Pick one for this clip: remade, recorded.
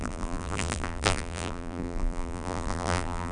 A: remade